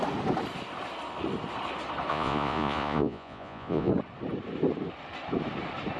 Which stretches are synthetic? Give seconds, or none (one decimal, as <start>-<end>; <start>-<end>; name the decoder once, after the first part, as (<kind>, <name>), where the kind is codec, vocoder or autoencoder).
2.1-3.9 (vocoder, Vocos)

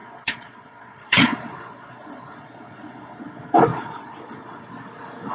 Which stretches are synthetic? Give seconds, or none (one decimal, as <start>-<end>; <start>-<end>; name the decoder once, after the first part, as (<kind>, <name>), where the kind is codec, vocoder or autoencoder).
0.0-3.2 (vocoder, Vocos); 3.7-4.7

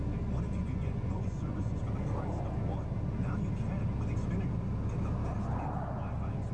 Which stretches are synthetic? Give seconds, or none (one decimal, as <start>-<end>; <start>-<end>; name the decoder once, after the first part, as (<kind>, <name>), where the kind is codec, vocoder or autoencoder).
0.6-1.8 (vocoder, Vocos)

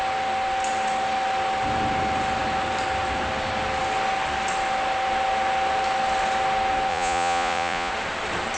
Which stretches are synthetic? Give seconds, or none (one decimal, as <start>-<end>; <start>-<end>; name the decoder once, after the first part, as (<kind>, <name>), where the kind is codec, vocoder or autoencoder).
6.9-7.9 (vocoder, Vocos)

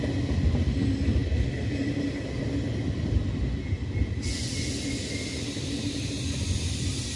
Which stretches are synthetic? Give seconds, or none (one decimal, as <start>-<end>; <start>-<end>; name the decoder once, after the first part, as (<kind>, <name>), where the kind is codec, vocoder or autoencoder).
none

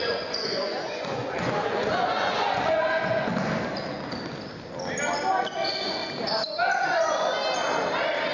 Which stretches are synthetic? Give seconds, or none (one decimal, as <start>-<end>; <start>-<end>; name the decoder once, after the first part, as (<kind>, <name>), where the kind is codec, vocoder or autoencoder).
0.0-3.3 (vocoder, Vocos); 5.4-6.0; 6.8-7.4